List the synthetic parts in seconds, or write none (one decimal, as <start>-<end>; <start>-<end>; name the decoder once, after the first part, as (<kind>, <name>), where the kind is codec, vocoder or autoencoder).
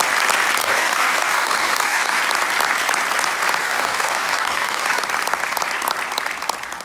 0.6-2.2 (codec, DAC); 3.6-5.0